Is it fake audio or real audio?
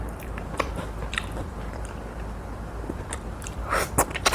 fake